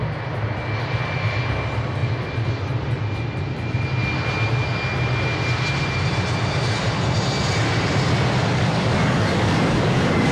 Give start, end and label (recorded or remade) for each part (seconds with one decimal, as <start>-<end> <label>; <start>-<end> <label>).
0.0-8.4 recorded; 8.4-10.3 remade